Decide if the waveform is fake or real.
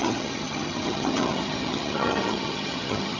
fake